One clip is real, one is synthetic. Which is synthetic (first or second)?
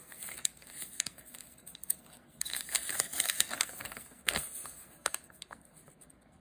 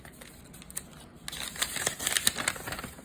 first